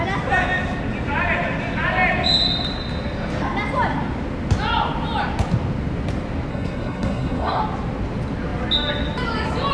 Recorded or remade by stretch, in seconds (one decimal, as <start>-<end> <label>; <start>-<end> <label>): 0.0-6.5 recorded; 6.5-7.6 remade; 7.6-9.7 recorded